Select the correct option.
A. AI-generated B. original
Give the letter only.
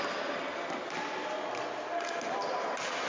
B